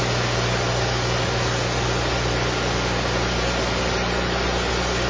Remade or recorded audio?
recorded